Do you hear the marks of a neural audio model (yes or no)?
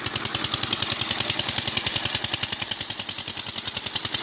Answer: no